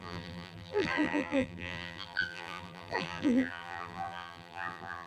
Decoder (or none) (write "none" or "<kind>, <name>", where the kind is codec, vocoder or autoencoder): vocoder, BigVGAN v2